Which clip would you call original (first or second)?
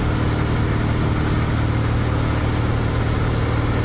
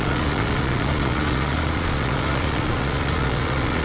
first